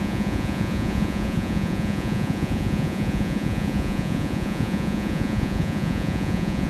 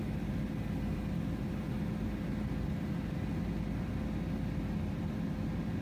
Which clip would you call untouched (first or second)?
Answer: second